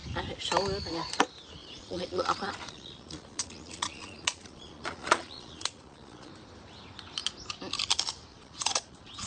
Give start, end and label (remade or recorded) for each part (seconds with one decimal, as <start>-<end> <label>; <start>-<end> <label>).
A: 0.0-1.6 recorded; 1.6-6.3 remade; 6.3-8.3 recorded; 8.3-9.3 remade